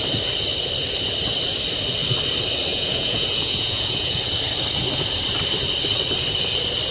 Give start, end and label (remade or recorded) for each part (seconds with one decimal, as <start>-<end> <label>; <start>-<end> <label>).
0.0-2.7 recorded; 2.7-4.2 remade; 4.2-6.9 recorded